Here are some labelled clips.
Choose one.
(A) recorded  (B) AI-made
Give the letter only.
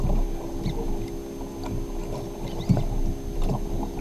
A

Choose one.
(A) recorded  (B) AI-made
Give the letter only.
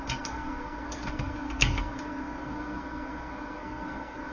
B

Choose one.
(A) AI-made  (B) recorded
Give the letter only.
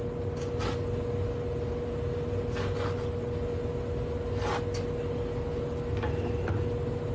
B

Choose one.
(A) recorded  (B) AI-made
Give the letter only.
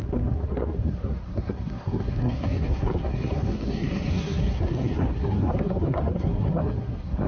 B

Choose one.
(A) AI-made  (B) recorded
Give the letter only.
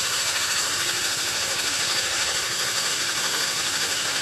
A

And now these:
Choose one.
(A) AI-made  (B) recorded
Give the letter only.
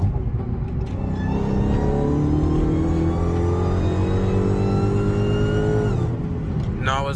B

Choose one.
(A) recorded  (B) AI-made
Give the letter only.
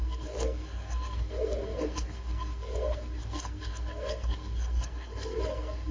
B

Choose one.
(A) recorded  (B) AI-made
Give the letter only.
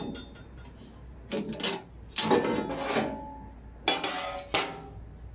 A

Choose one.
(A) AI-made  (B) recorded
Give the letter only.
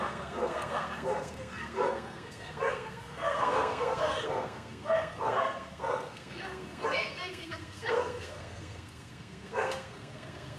A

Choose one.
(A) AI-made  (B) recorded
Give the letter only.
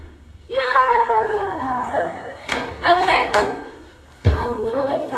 A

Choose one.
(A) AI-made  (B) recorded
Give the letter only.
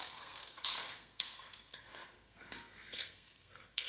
A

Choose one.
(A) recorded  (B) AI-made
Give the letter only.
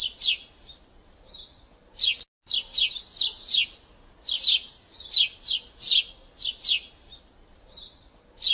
A